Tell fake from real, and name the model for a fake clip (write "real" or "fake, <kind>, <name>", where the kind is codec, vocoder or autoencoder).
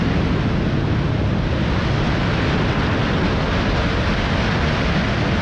real